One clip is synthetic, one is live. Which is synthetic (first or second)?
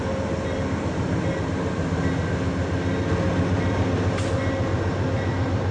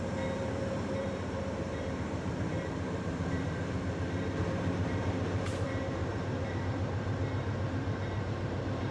second